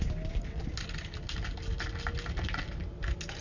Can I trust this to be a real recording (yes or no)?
yes